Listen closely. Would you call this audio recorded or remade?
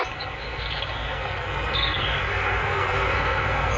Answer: remade